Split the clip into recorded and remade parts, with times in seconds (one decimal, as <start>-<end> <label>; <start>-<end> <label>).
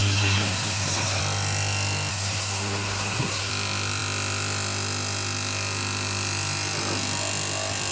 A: 0.0-1.2 remade; 1.2-2.1 recorded; 2.1-3.5 remade; 3.5-7.9 recorded